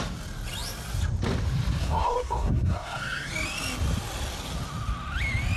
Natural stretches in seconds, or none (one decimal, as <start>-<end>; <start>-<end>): 0.0-1.8; 3.3-5.6